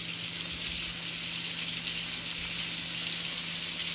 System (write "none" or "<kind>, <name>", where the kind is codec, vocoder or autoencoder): none